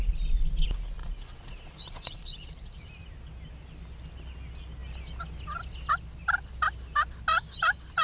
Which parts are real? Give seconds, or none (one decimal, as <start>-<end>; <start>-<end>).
0.0-1.0; 2.8-8.0